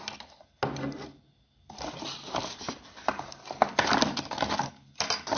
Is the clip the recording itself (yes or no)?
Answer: yes